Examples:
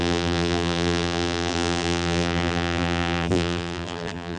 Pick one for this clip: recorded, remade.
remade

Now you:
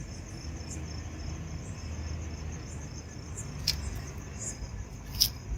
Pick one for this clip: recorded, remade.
recorded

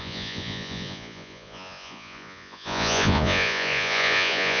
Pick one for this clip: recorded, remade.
remade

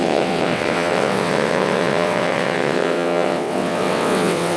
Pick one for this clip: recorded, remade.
remade